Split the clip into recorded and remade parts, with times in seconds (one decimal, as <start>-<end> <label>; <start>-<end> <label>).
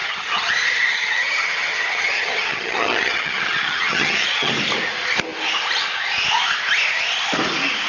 0.0-0.5 remade; 0.5-0.9 recorded; 0.9-4.5 remade; 4.5-7.9 recorded